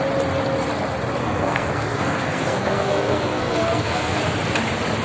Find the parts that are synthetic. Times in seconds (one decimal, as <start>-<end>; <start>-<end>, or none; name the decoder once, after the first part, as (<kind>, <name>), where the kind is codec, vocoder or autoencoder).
1.2-4.2 (codec, SNAC)

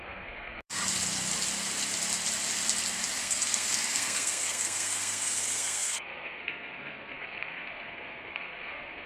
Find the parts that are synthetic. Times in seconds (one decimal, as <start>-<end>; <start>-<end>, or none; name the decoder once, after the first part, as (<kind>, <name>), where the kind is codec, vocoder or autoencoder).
0.0-0.8 (codec, SNAC); 3.2-9.1

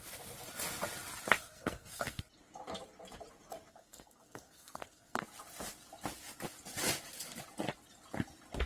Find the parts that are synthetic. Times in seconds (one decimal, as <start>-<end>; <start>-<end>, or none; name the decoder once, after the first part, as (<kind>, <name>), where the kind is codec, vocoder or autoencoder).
1.4-2.2 (codec, SNAC); 3.7-5.2

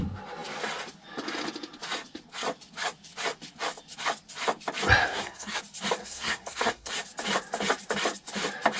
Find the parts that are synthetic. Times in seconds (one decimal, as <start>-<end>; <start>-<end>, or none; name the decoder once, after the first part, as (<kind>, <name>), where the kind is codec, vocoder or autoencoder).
5.0-5.6 (codec, SNAC); 6.0-6.9

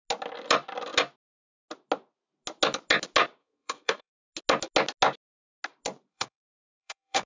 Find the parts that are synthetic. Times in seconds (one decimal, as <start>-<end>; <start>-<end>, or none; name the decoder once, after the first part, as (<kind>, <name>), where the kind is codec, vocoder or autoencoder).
3.4-4.1 (codec, SNAC); 6.1-7.3